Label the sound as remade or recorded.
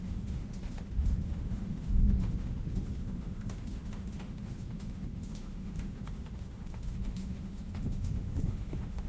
remade